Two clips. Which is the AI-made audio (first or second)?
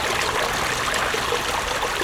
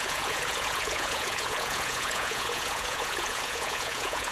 second